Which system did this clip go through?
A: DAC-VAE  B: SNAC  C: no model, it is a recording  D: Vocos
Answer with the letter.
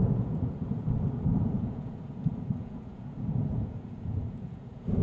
D